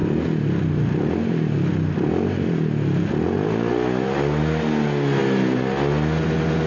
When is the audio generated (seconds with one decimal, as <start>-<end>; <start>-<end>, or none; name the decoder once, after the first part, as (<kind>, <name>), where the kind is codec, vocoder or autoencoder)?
none